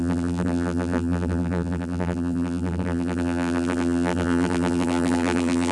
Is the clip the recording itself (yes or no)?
no